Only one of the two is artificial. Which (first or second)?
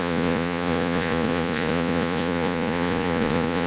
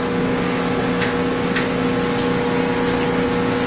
first